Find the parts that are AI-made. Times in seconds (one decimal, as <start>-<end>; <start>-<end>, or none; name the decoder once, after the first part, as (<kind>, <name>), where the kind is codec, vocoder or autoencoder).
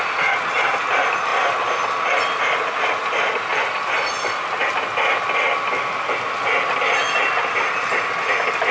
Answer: none